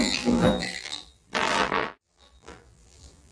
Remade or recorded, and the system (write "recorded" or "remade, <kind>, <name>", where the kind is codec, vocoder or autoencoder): remade, vocoder, BigVGAN v2